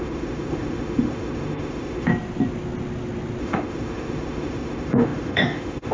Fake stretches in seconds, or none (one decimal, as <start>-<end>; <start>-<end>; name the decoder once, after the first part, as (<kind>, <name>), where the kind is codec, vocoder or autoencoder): 0.0-2.1 (autoencoder, DAC-VAE); 3.4-5.9